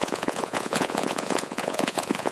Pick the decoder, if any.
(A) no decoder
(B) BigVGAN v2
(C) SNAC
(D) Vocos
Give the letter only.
D